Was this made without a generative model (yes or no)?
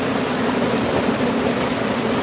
yes